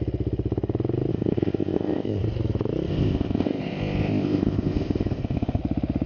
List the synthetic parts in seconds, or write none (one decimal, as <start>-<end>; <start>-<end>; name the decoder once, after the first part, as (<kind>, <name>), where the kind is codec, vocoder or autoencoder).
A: 1.1-2.2 (codec, ZipCodec); 2.9-5.6